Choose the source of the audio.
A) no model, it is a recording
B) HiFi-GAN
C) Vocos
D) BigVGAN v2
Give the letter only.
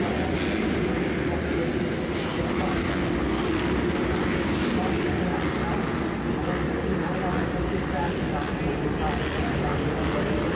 A